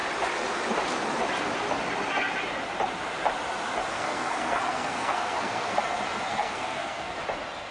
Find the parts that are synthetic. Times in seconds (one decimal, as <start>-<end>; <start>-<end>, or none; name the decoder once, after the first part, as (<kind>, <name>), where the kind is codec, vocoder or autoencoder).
3.9-5.8 (codec, SNAC); 6.3-7.2